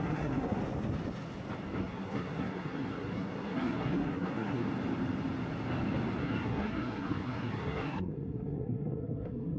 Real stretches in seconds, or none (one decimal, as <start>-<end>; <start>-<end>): 0.6-1.8; 4.7-6.2